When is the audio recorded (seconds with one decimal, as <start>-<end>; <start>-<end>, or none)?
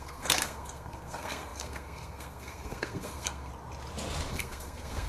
3.5-4.3